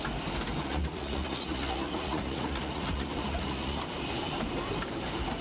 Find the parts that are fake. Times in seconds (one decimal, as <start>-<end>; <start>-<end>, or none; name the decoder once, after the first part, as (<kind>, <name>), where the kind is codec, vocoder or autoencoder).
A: 0.6-3.8 (vocoder, Vocos)